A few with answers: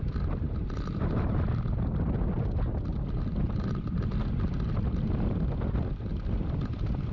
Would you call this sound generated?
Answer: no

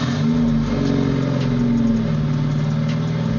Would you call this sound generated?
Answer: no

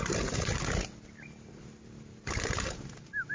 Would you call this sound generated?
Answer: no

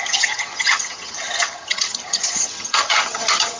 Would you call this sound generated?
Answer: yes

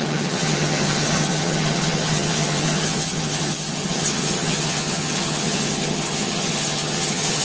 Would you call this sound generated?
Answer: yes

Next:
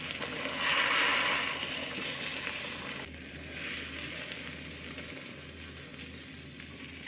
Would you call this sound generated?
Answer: no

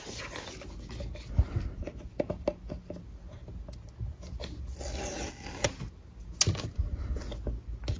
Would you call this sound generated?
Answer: no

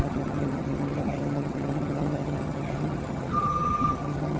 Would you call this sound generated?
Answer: yes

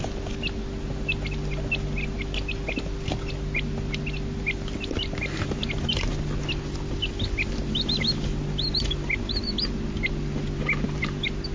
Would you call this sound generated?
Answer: no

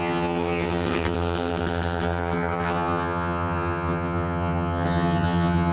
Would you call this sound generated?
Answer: yes